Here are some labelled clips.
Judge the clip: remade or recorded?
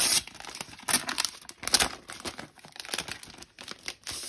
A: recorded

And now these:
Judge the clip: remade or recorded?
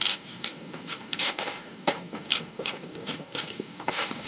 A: remade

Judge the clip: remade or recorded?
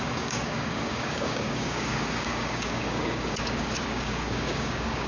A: remade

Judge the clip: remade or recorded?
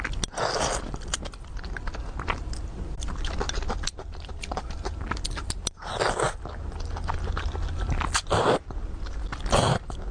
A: recorded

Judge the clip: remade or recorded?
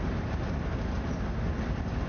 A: recorded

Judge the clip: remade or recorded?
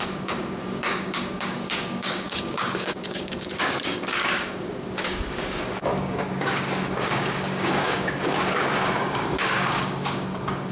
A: remade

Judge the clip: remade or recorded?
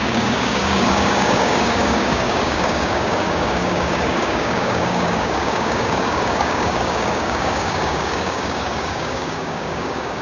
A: remade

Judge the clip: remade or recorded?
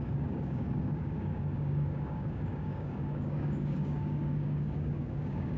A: remade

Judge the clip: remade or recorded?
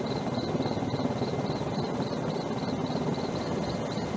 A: recorded